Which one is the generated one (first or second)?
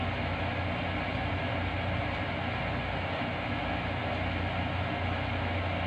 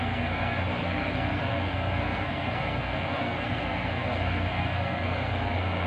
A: second